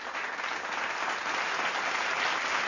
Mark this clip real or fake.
real